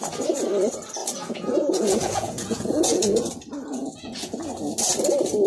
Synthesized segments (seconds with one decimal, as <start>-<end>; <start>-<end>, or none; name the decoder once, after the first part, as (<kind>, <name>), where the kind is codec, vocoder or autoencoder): 1.0-3.3 (vocoder, Vocos); 3.8-4.3